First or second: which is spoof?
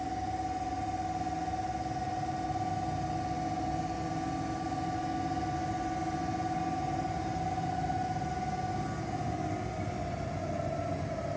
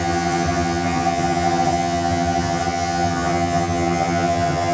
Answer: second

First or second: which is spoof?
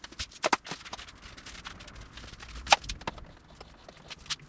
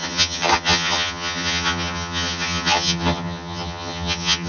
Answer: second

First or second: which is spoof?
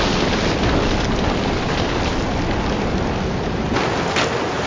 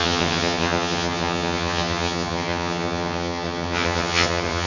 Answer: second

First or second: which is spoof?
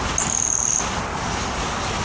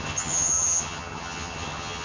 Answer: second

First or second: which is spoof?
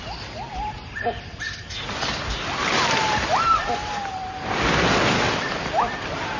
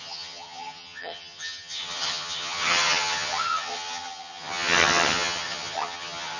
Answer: second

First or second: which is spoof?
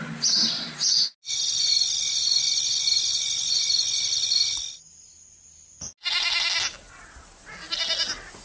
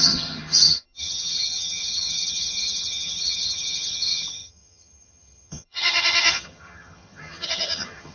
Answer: second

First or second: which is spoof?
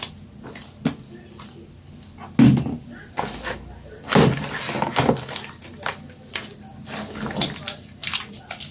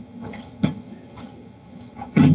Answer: second